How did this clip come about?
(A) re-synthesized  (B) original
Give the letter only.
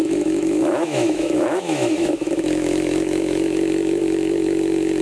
A